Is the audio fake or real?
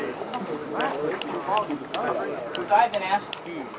real